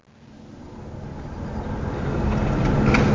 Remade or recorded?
recorded